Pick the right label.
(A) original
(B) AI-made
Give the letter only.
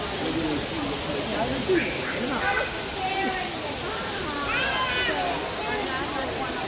A